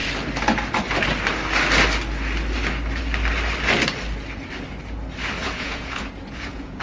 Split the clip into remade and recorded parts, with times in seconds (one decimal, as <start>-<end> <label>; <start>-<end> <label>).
0.0-5.4 recorded; 5.4-6.8 remade